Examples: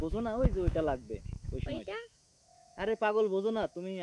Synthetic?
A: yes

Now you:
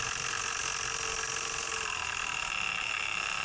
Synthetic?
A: no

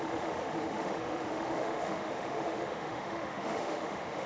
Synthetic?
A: yes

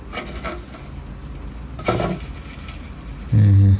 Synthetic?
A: no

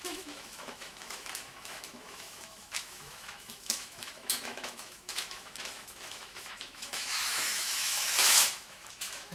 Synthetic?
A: yes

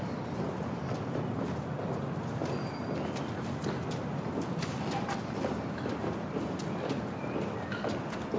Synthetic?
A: no